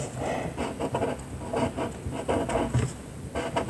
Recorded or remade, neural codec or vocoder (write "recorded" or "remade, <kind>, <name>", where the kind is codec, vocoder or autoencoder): recorded